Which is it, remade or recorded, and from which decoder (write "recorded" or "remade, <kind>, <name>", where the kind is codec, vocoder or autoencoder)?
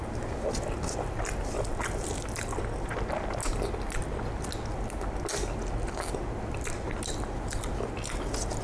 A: recorded